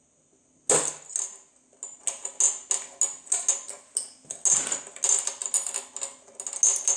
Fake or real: real